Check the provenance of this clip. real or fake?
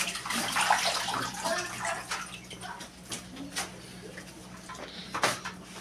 real